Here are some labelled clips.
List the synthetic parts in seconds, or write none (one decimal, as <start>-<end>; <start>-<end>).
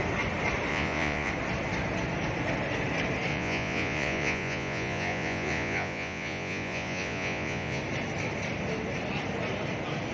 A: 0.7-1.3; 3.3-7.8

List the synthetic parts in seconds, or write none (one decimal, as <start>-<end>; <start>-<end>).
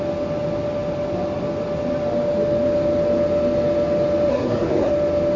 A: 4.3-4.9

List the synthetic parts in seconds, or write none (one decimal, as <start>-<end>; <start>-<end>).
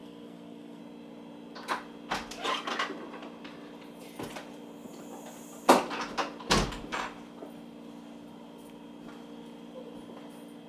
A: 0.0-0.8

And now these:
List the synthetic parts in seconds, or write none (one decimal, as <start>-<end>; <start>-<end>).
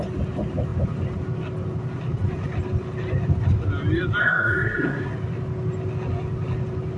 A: 4.2-5.1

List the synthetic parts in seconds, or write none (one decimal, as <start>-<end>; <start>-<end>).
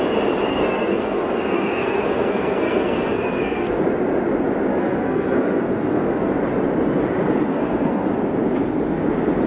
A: 0.5-3.8; 4.7-6.3; 7.5-8.1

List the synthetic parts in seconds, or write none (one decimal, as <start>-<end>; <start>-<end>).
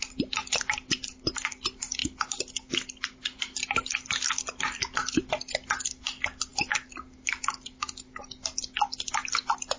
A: none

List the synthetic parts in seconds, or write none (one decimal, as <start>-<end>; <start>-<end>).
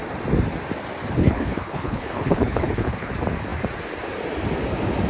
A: 1.2-3.1